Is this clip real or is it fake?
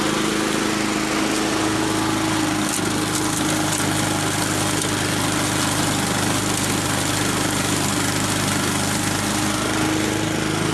real